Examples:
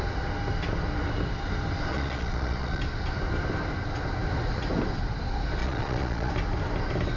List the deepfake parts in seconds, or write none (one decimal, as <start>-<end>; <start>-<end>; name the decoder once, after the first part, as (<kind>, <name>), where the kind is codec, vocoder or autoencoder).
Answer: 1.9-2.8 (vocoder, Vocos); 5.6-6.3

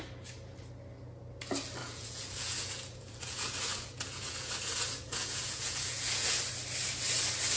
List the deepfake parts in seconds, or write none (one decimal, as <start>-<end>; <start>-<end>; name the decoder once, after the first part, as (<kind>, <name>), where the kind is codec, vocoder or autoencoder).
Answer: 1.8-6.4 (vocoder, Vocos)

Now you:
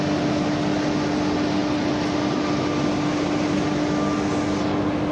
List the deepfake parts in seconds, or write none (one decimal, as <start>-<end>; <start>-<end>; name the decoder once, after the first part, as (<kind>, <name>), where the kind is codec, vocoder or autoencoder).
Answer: none

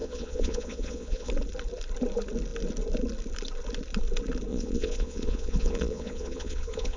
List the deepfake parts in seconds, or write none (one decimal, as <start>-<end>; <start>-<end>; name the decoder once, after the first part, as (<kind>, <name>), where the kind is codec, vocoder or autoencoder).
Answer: 0.0-1.3 (vocoder, Vocos); 4.5-7.0

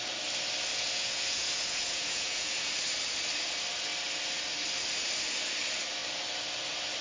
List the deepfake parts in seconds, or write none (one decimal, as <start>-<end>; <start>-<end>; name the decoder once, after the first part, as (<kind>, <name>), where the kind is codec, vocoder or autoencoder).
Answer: 0.7-2.7 (vocoder, Vocos)